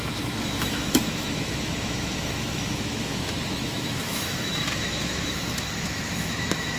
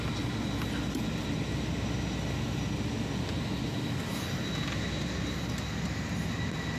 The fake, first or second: first